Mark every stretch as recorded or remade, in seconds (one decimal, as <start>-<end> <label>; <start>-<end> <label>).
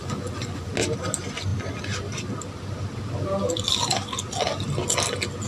0.0-0.7 remade; 0.7-5.5 recorded